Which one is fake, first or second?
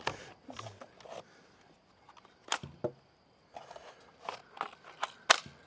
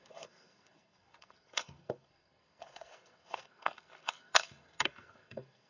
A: second